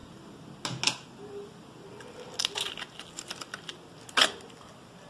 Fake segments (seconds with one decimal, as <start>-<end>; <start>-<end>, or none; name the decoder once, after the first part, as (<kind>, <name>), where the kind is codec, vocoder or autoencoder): none